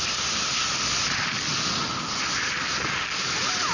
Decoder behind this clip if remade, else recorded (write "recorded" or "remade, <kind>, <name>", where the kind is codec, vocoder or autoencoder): recorded